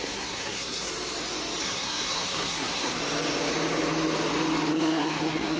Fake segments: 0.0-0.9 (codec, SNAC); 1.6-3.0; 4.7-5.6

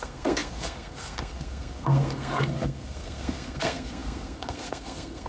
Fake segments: 0.0-5.3 (codec, SNAC)

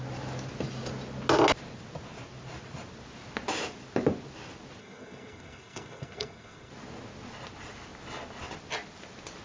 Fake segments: 4.8-6.7 (codec, SNAC)